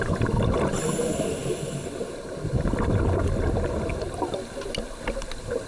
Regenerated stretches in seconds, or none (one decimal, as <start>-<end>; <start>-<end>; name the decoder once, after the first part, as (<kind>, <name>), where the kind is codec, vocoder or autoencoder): none